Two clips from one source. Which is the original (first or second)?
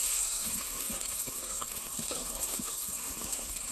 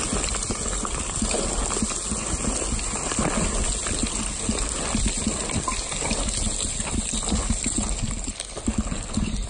second